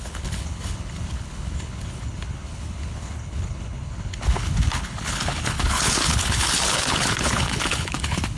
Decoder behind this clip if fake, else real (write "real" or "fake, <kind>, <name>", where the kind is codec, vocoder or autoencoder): fake, codec, HILCodec